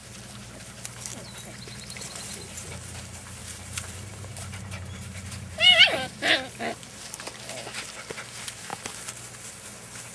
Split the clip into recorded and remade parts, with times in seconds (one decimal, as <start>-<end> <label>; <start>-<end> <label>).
0.0-3.4 recorded; 3.4-6.3 remade; 6.3-10.1 recorded